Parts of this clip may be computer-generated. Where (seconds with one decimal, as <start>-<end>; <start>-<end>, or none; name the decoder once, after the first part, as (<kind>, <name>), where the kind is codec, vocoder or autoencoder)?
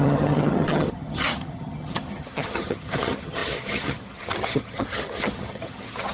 0.0-6.1 (vocoder, HiFi-GAN)